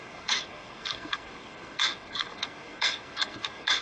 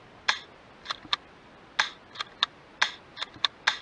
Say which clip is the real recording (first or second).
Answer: second